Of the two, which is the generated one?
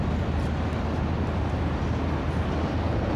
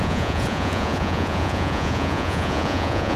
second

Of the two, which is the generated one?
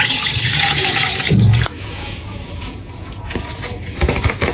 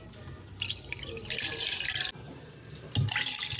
first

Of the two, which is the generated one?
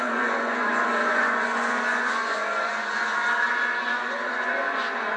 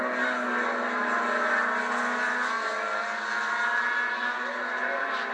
first